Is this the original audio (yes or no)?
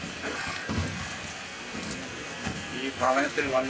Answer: no